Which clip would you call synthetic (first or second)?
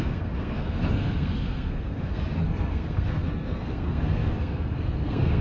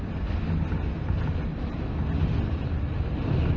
first